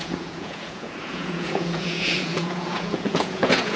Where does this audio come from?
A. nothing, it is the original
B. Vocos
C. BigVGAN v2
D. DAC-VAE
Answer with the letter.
B